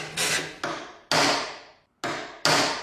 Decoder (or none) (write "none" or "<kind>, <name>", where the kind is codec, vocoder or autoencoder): none